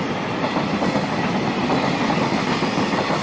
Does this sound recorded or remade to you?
recorded